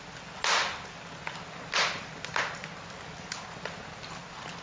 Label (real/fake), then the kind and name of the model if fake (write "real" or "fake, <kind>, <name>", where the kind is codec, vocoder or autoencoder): real